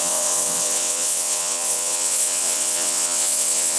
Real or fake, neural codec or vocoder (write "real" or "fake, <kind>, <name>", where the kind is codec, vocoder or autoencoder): fake, vocoder, WaveNeXt